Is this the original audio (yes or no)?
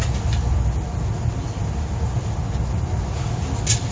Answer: yes